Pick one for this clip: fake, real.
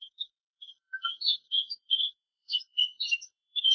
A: fake